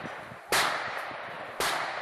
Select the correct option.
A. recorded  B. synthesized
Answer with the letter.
A